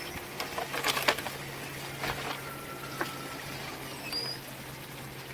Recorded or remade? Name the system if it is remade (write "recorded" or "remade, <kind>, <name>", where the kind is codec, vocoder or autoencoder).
recorded